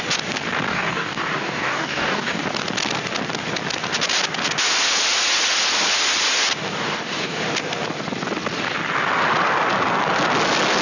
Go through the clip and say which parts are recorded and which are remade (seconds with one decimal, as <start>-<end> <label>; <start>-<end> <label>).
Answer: 0.0-0.7 recorded; 0.7-2.4 remade; 2.4-6.7 recorded; 6.7-7.4 remade; 7.4-10.8 recorded